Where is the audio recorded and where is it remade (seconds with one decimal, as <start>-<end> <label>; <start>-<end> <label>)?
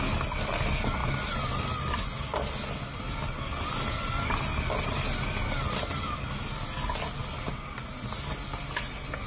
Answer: 0.0-9.3 recorded